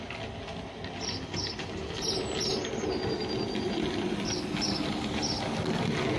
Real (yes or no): yes